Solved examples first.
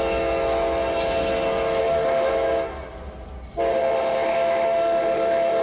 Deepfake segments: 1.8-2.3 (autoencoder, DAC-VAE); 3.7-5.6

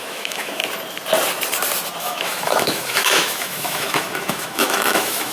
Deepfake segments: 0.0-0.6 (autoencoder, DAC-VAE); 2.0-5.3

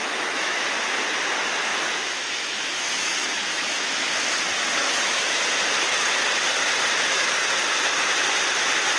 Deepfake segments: 0.0-0.6 (autoencoder, DAC-VAE); 1.7-4.1; 4.8-5.4

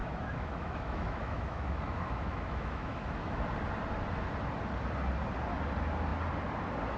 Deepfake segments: 0.0-3.4 (autoencoder, DAC-VAE)

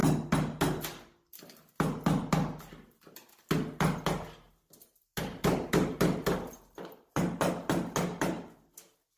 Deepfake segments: none

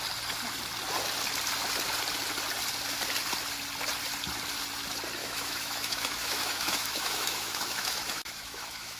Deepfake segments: 5.2-9.0 (autoencoder, DAC-VAE)

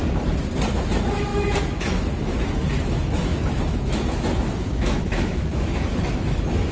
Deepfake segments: 0.7-6.7 (autoencoder, DAC-VAE)